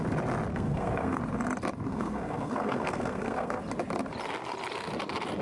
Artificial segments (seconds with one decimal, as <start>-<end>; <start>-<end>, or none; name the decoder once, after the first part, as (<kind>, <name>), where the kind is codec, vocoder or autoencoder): 0.5-1.2 (codec, SNAC); 1.9-3.6